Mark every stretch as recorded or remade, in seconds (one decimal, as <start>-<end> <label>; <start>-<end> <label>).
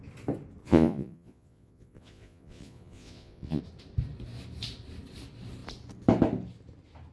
0.0-0.6 recorded; 0.6-3.6 remade; 3.6-7.1 recorded